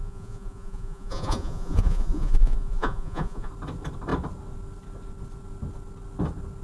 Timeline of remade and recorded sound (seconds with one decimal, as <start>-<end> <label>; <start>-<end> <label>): 0.0-3.5 remade; 3.5-6.6 recorded